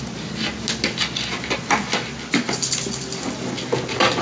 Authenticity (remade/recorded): recorded